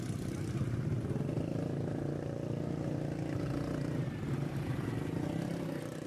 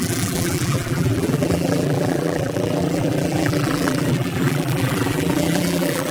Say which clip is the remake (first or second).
second